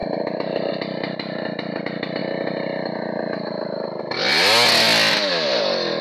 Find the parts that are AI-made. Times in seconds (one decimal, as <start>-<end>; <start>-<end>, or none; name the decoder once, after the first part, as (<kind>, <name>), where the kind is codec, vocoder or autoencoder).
none